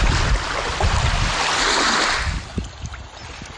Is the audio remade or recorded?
recorded